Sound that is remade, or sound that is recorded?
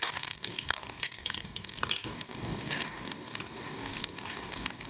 remade